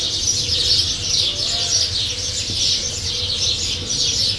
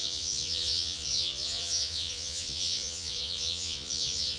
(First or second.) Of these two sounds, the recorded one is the first